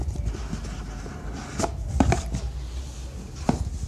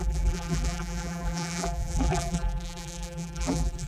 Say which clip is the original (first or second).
first